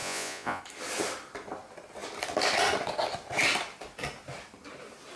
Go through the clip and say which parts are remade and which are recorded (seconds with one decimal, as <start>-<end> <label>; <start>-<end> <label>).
0.0-0.6 remade; 0.6-5.2 recorded

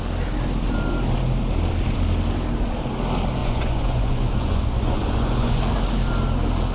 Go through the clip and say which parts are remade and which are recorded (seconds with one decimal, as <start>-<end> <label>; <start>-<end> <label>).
0.0-3.4 recorded; 3.4-5.6 remade; 5.6-6.7 recorded

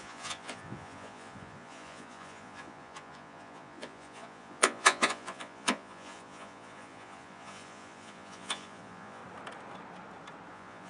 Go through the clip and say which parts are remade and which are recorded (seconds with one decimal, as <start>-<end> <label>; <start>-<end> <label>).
0.0-9.2 remade; 9.2-10.5 recorded; 10.5-10.9 remade

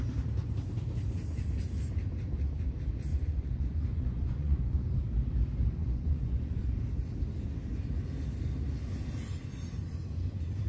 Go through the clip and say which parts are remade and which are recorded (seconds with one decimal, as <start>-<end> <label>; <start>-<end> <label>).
0.0-3.1 recorded; 3.1-5.0 remade; 5.0-5.8 recorded; 5.8-6.6 remade; 6.6-10.7 recorded

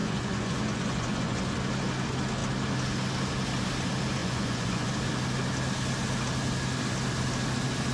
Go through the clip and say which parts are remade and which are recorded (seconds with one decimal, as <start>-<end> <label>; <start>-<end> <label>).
0.0-1.4 remade; 1.4-4.2 recorded; 4.2-4.9 remade; 4.9-7.9 recorded

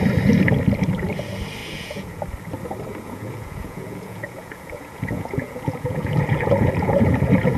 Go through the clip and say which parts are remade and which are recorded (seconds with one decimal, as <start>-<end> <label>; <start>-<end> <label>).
0.0-1.6 recorded; 1.6-2.2 remade; 2.2-2.9 recorded; 2.9-7.6 remade

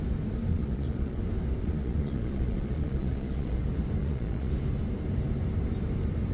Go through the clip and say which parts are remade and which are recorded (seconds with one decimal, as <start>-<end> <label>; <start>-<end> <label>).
0.0-0.5 recorded; 0.5-1.2 remade; 1.2-1.6 recorded; 1.6-3.6 remade; 3.6-4.0 recorded; 4.0-4.5 remade; 4.5-6.3 recorded

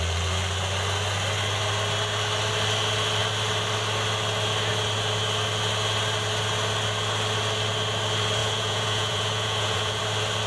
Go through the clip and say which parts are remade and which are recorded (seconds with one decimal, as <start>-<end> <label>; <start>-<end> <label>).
0.0-8.4 recorded; 8.4-10.0 remade; 10.0-10.5 recorded